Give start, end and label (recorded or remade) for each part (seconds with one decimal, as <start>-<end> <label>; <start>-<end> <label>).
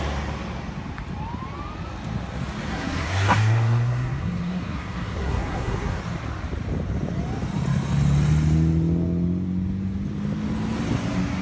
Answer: 0.0-2.7 recorded; 2.7-6.0 remade; 6.0-11.4 recorded